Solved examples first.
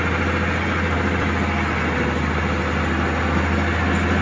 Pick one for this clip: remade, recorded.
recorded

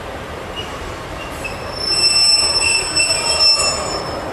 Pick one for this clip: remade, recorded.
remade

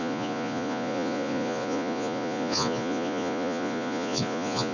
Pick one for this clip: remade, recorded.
remade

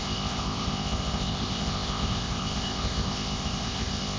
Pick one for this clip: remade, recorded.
remade